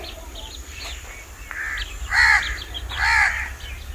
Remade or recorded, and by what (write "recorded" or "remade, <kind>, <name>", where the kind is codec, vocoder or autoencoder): recorded